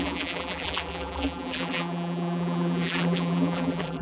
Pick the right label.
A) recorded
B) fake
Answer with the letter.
B